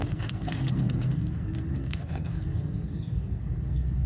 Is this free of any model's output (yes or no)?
no